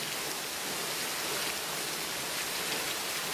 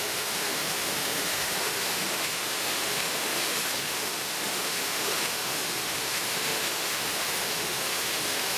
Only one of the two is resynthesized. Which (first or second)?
second